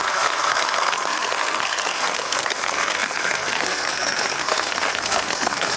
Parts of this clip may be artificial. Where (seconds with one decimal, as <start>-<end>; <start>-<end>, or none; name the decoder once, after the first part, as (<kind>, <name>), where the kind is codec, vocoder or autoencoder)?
0.0-5.8 (codec, SNAC)